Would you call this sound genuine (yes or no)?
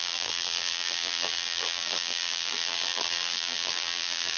no